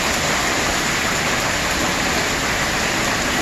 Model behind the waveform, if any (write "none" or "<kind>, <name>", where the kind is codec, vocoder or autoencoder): none